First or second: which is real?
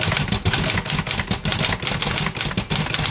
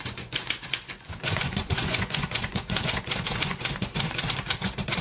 first